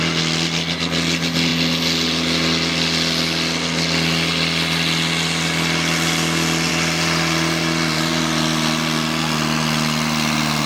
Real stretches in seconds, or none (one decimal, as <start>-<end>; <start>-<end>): 0.0-10.7